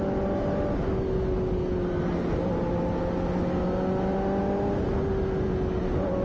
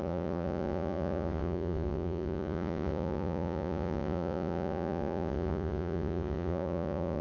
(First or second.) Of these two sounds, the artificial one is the second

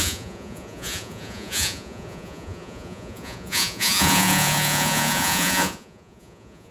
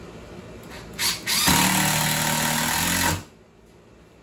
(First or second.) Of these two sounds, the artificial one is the first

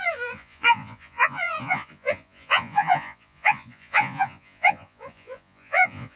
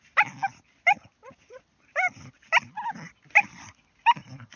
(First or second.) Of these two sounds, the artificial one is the first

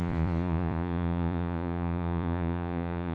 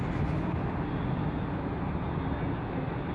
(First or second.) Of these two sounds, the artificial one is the first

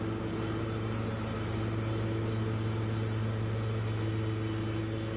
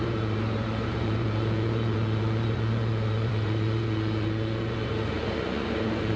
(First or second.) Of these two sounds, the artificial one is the second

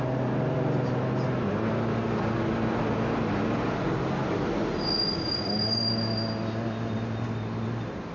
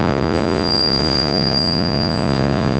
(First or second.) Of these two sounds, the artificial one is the second